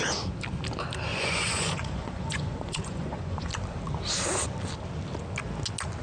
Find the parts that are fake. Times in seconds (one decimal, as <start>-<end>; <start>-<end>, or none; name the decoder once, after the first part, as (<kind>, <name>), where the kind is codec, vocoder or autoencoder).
1.1-3.5 (vocoder, Vocos)